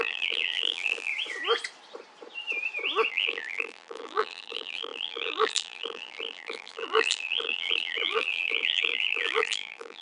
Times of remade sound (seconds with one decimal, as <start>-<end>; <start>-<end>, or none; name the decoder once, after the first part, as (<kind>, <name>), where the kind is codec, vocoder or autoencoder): 0.0-1.1 (vocoder, BigVGAN v2); 3.1-10.0